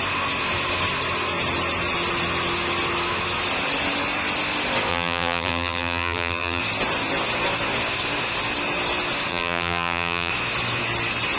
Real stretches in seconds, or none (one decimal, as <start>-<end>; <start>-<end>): 0.0-4.9; 6.6-9.3; 10.3-11.4